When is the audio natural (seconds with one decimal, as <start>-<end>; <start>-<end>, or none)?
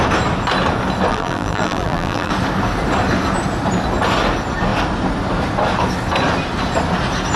0.0-1.1; 2.3-7.4